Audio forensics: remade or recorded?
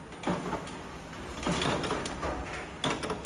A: recorded